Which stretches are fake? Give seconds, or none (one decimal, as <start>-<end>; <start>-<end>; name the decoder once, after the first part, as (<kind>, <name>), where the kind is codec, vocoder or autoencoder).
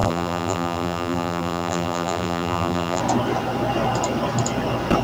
0.0-3.0 (vocoder, BigVGAN v2)